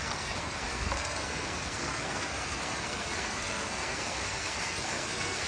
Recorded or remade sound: remade